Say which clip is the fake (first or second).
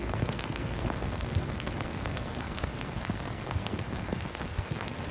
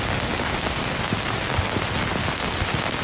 first